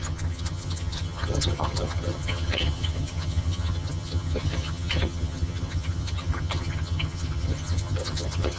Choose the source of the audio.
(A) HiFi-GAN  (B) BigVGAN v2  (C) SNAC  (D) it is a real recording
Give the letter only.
A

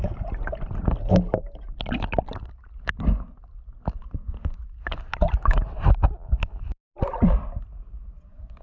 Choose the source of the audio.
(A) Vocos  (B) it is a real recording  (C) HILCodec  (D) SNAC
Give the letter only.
B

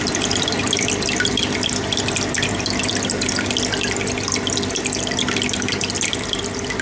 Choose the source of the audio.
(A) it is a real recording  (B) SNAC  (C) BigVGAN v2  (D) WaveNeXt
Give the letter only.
A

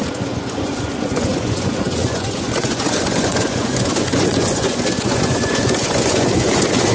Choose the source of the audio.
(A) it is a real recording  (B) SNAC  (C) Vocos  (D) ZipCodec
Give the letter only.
C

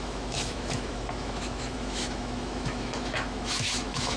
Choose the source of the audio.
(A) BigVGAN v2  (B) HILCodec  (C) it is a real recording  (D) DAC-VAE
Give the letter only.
D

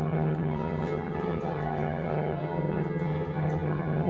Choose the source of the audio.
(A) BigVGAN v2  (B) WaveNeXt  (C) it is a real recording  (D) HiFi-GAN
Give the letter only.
D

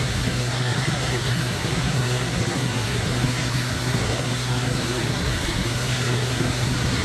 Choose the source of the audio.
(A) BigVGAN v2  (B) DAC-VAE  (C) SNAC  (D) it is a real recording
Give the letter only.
C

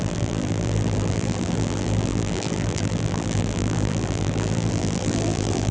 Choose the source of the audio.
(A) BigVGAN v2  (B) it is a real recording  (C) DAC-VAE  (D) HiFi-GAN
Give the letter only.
A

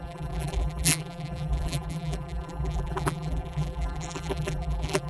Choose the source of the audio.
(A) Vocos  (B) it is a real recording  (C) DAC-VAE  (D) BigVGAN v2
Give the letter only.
D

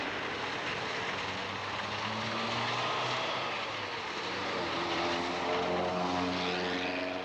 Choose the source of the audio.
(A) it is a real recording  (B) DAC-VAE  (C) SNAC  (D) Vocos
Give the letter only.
A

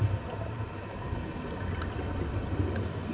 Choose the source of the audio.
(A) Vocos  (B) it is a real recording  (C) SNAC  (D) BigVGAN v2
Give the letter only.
B